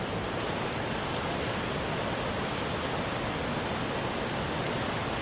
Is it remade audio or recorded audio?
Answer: recorded